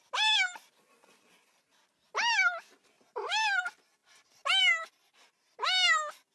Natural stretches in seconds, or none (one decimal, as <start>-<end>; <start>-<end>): 0.0-6.3